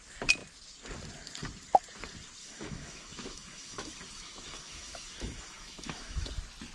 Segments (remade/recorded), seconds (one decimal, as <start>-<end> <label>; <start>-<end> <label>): 0.0-2.4 recorded; 2.4-6.3 remade; 6.3-6.7 recorded